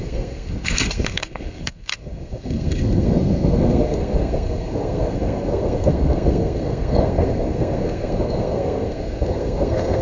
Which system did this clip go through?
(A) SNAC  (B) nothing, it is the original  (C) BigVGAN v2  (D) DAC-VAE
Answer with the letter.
A